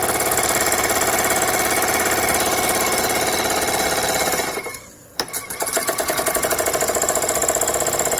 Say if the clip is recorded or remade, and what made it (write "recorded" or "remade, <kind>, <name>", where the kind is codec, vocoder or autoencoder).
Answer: recorded